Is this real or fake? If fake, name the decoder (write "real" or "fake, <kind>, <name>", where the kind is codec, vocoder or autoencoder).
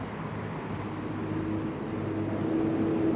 real